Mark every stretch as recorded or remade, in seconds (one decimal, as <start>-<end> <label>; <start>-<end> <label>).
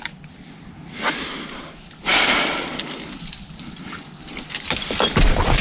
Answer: 0.0-5.6 recorded